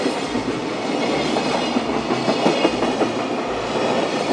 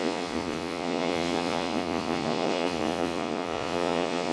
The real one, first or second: first